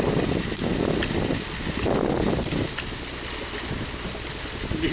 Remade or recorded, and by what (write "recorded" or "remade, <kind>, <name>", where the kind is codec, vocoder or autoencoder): recorded